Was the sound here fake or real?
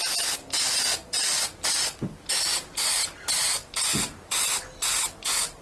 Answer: real